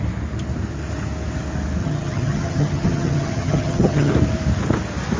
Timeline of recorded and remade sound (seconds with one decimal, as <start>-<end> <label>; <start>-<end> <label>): 0.0-1.8 recorded; 1.8-4.1 remade; 4.1-5.2 recorded